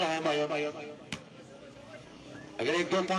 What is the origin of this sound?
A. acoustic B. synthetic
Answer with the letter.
B